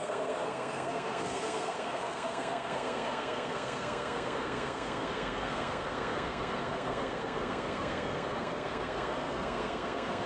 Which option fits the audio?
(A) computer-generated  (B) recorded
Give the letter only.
A